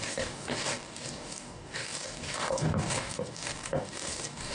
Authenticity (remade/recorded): remade